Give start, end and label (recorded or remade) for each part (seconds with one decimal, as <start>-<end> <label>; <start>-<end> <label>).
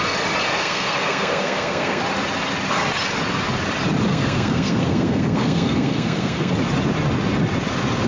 0.0-0.5 recorded; 0.5-2.0 remade; 2.0-4.1 recorded; 4.1-6.5 remade; 6.5-8.1 recorded